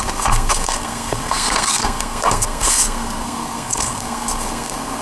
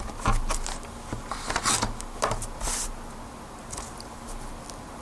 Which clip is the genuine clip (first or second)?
second